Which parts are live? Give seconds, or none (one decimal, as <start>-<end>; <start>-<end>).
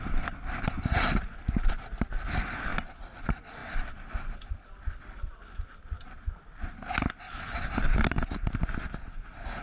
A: 0.0-9.6